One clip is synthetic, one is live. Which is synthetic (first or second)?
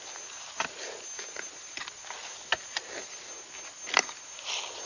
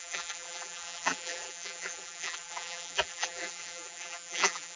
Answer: second